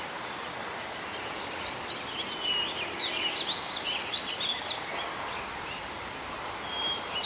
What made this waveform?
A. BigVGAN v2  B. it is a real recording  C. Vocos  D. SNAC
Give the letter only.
B